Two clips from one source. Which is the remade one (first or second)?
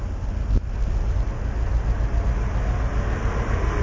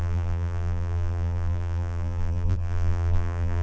second